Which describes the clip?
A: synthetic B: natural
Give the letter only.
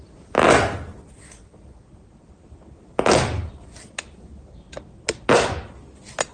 B